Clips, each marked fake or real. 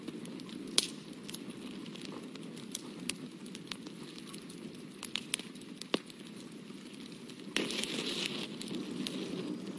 real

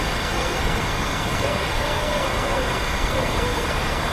fake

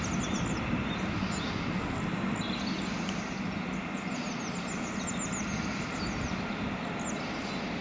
real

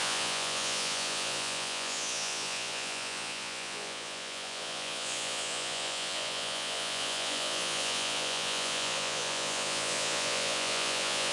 fake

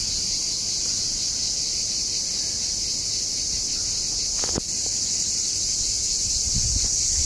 real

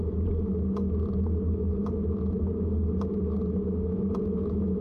real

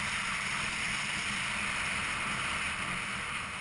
real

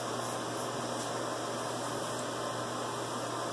real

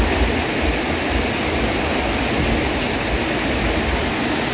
real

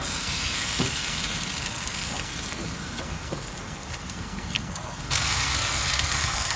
fake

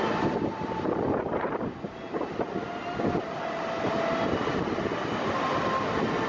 real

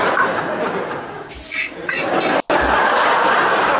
real